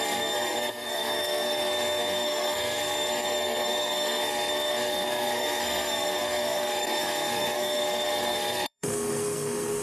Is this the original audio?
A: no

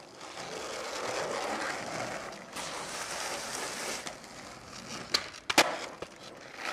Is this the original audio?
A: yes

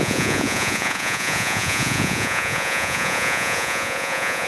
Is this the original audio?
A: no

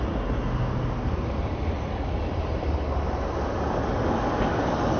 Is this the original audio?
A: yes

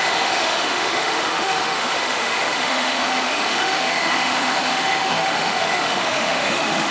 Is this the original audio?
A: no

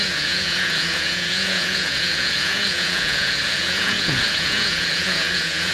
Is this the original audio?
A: no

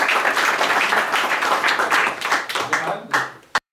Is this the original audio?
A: no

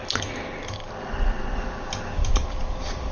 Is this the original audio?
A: yes